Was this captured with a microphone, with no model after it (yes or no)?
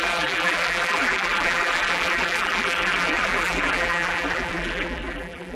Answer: no